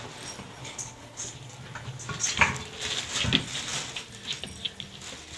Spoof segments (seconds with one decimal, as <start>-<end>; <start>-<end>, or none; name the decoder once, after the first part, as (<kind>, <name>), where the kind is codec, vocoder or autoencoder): 0.6-1.2 (codec, HILCodec)